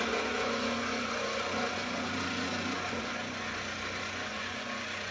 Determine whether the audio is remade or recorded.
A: remade